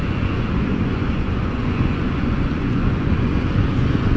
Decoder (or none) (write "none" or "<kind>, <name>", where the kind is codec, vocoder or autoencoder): vocoder, Vocos